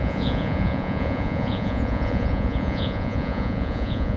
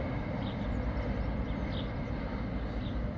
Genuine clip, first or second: second